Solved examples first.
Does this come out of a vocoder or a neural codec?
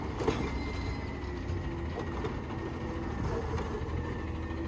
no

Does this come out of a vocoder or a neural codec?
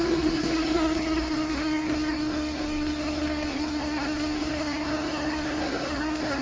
yes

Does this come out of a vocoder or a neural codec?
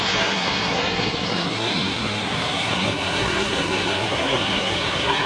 yes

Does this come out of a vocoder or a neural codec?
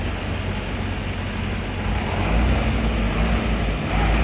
no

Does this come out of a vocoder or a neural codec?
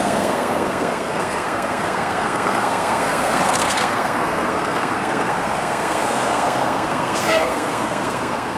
yes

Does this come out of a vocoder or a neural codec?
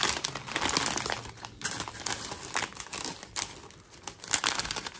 no